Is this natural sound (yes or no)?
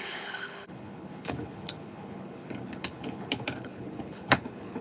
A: no